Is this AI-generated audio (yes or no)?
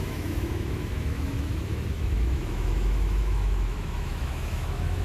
yes